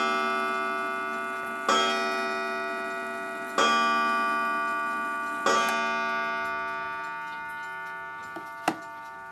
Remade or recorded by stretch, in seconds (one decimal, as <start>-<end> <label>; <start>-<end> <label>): 0.0-9.3 recorded